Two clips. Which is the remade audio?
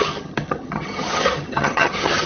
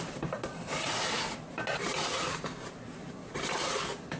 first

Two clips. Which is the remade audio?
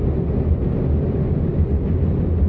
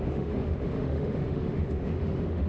second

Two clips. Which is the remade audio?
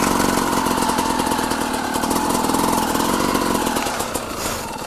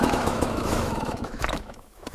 second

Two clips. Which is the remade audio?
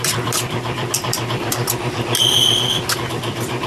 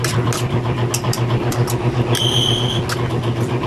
first